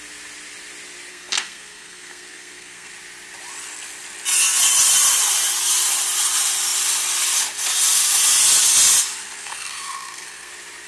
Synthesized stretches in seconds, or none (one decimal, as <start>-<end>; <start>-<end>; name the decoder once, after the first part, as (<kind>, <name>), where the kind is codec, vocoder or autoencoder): 1.1-2.9 (codec, SNAC); 9.4-10.5